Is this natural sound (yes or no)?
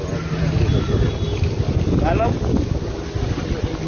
yes